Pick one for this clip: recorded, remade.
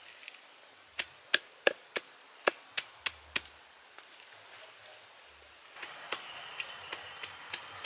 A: recorded